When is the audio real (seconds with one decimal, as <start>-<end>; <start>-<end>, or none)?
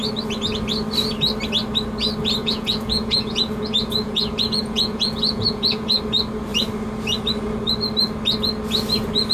0.0-2.4; 6.0-9.3